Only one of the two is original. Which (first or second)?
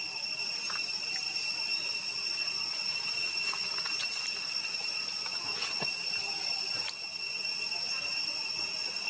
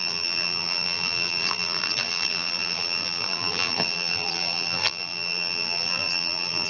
first